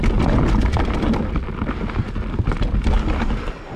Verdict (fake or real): real